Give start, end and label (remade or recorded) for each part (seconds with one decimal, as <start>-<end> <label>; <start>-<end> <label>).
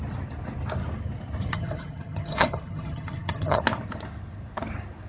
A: 0.0-1.5 recorded; 1.5-3.6 remade; 3.6-5.1 recorded